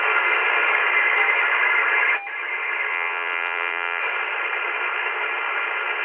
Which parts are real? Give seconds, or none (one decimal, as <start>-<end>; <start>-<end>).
0.0-2.9; 4.0-6.0